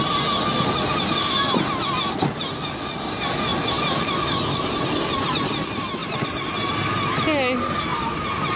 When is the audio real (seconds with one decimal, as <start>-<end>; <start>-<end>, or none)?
0.0-3.5; 5.5-6.0; 6.7-7.9